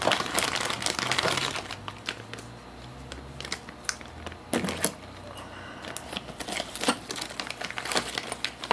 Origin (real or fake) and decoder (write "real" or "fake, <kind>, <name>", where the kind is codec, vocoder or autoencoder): real